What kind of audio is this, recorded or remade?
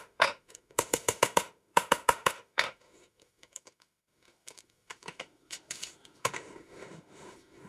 remade